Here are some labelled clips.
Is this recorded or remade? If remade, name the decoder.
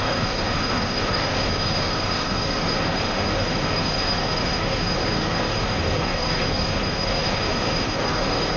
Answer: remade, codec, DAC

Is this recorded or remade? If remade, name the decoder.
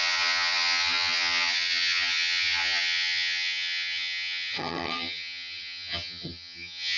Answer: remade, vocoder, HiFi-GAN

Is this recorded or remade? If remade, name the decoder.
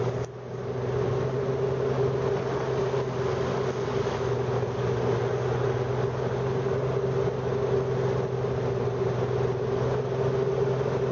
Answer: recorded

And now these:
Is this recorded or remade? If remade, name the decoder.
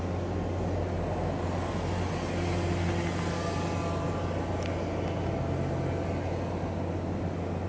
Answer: recorded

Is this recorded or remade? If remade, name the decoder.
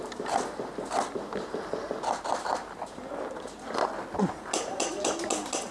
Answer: recorded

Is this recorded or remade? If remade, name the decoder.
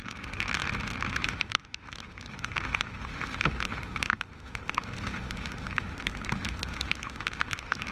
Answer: remade, autoencoder, DAC-VAE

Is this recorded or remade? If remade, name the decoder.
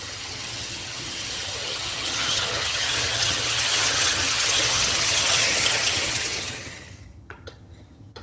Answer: remade, vocoder, HiFi-GAN